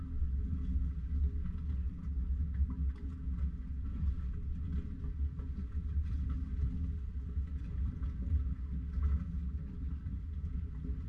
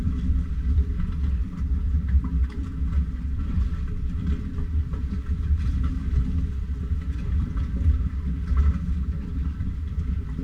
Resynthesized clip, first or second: second